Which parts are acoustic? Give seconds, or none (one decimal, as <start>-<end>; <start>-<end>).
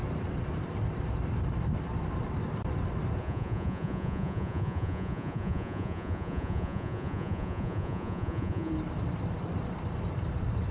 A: 0.0-3.2; 8.7-10.7